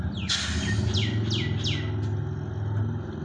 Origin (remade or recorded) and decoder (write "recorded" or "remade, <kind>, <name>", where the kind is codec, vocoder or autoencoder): recorded